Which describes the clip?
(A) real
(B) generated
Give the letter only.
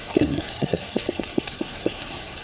B